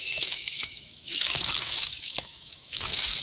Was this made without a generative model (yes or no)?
no